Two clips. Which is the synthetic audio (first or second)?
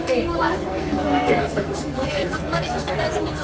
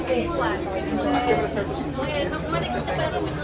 first